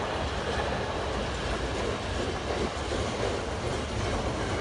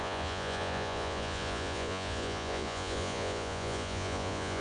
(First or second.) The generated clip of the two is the second